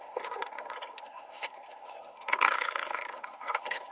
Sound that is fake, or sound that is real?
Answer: fake